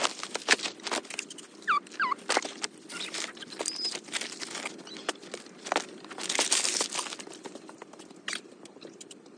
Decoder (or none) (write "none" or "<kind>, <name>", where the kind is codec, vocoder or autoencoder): none